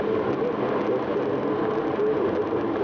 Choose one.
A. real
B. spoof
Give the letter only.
A